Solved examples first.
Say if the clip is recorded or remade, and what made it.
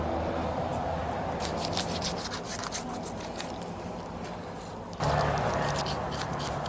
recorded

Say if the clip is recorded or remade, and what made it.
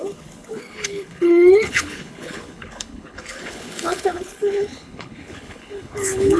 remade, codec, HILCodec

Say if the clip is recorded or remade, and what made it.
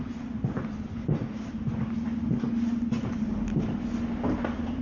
recorded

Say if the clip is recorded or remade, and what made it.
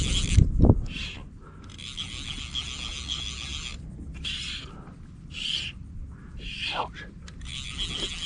recorded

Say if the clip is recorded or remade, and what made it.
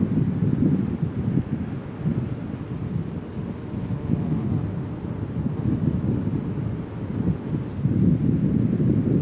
recorded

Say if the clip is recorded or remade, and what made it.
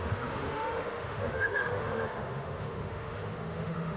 remade, autoencoder, DAC-VAE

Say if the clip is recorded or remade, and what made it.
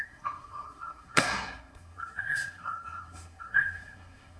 remade, codec, SNAC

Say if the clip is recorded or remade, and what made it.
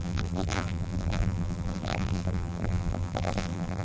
remade, vocoder, BigVGAN v2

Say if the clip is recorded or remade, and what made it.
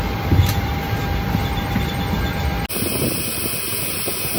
recorded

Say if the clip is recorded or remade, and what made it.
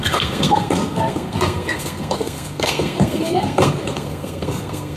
remade, codec, SNAC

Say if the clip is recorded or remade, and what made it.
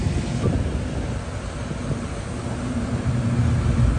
recorded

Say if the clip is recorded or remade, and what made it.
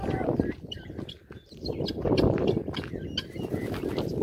recorded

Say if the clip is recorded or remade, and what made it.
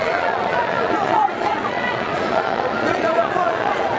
remade, vocoder, Vocos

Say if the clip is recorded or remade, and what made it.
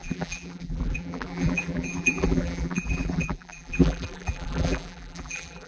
remade, vocoder, BigVGAN v2